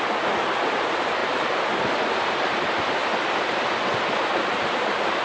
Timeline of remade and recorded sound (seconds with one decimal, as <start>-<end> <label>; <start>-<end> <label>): 0.0-5.2 recorded